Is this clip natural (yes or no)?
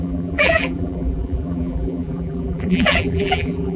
no